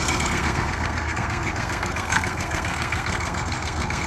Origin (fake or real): fake